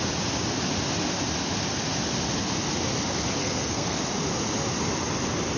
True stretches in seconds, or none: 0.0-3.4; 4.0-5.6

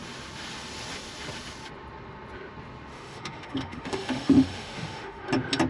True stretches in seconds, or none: 0.0-2.9; 5.3-5.7

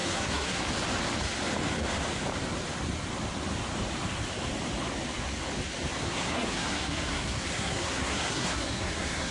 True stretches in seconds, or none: 0.6-6.0

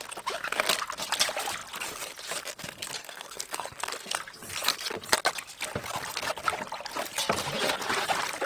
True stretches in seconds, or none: 0.0-3.0; 4.2-8.5

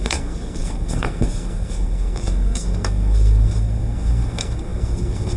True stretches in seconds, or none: none

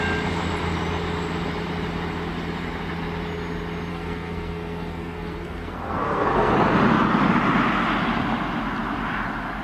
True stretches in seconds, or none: 0.0-3.9; 6.5-9.6

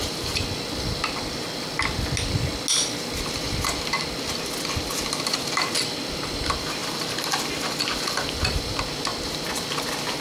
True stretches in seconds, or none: 0.0-10.2

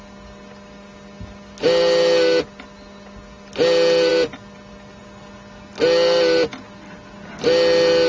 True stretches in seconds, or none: 0.0-8.1